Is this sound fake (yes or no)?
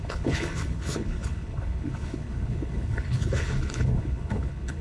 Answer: yes